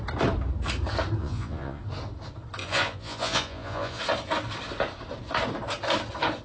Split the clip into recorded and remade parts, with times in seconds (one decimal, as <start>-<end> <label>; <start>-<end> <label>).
0.0-1.2 recorded; 1.2-1.8 remade; 1.8-2.6 recorded; 2.6-4.0 remade; 4.0-6.4 recorded